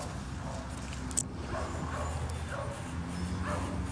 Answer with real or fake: real